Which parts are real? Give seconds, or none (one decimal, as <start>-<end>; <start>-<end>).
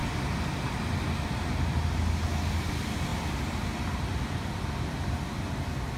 0.0-3.1; 4.6-6.0